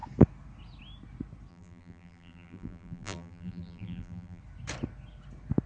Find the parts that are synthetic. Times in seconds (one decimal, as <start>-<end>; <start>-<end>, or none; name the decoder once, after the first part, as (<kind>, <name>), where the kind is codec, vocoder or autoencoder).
1.5-4.4 (vocoder, BigVGAN v2)